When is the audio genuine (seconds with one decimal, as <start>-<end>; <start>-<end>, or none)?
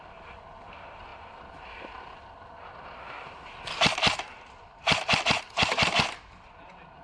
0.0-7.0